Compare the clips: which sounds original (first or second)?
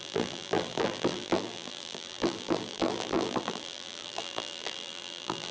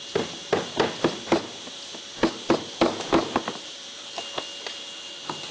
second